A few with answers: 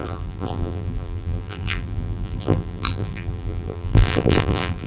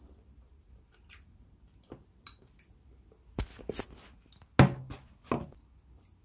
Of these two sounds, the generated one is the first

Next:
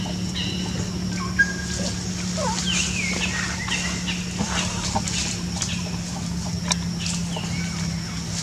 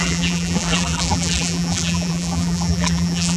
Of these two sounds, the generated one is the second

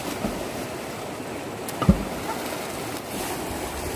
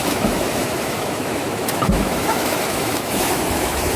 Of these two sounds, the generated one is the second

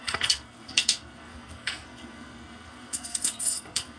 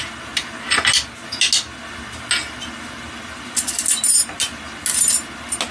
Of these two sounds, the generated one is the first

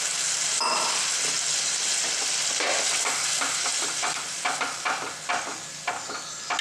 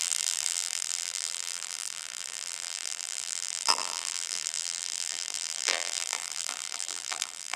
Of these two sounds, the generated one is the second